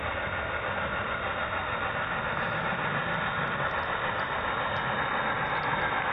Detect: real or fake real